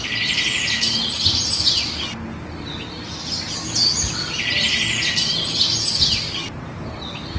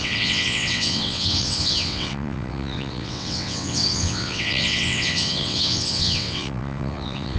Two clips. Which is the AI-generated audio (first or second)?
second